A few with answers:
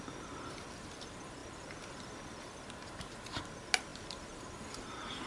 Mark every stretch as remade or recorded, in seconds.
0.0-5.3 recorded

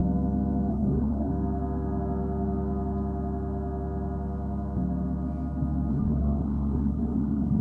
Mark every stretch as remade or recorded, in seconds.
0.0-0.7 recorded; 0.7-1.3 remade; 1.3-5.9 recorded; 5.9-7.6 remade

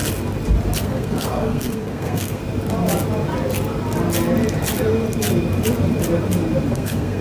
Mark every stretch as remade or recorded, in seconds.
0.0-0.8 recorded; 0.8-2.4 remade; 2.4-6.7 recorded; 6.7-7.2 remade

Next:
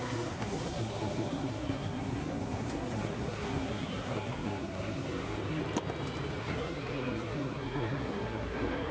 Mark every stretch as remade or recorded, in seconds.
0.0-5.6 remade; 5.6-6.4 recorded; 6.4-8.9 remade

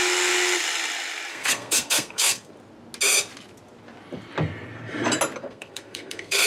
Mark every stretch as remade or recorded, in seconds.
0.0-1.3 recorded; 1.3-2.5 remade; 2.5-5.4 recorded; 5.4-6.5 remade